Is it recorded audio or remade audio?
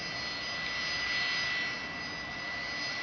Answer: recorded